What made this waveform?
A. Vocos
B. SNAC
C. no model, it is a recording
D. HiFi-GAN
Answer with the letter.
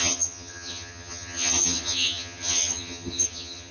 D